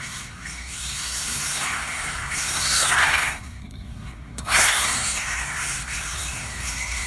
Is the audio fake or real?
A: fake